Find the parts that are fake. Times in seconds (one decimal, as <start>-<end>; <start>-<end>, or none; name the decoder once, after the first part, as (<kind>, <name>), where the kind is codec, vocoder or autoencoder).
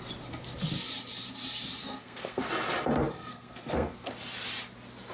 1.8-2.5 (codec, SNAC); 3.3-4.1